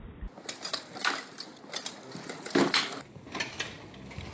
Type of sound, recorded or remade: recorded